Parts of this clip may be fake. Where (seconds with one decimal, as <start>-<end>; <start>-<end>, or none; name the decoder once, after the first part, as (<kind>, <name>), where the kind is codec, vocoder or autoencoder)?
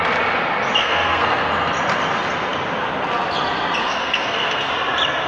0.8-1.5 (codec, SNAC); 3.8-4.7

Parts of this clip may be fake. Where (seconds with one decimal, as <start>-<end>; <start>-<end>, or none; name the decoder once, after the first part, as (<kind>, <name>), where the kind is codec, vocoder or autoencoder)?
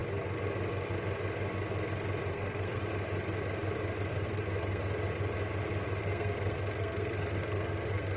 2.3-2.8 (codec, SNAC); 4.1-4.8; 6.0-8.2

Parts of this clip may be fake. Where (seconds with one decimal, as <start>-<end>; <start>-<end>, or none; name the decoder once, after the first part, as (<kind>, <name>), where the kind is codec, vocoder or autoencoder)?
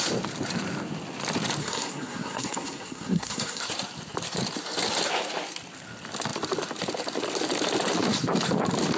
1.6-3.6 (codec, SNAC)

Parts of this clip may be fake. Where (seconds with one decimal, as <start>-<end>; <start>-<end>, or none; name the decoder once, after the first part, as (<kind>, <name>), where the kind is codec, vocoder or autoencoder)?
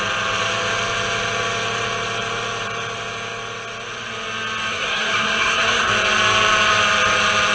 4.7-5.9 (codec, SNAC)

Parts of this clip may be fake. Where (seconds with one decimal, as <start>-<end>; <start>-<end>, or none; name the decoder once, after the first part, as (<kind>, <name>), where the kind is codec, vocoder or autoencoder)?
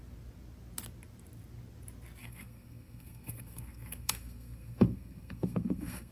2.2-6.1 (codec, SNAC)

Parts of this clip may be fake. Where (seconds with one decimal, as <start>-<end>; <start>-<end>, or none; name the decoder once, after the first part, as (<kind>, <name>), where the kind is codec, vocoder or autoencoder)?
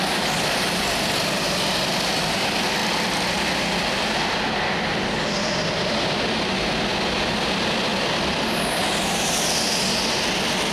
none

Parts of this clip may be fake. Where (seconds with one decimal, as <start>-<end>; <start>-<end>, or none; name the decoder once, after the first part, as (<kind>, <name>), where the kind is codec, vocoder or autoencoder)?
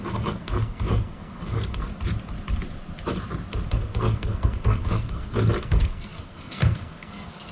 0.0-1.9 (codec, SNAC); 3.7-7.5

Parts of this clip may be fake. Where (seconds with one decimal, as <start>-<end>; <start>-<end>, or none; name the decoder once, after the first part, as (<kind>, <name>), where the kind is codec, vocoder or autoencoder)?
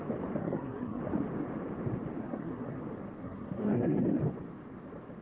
0.4-1.0 (codec, SNAC); 2.2-2.8; 3.2-4.0